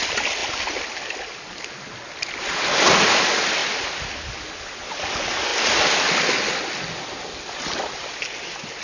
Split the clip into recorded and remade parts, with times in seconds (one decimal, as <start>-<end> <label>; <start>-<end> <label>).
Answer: 0.0-8.8 recorded